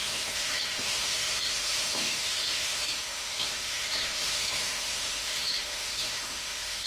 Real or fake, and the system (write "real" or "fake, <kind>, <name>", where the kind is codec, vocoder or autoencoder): fake, autoencoder, DAC-VAE